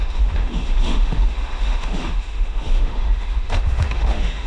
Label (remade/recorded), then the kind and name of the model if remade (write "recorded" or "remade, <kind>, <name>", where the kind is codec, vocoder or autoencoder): remade, autoencoder, DAC-VAE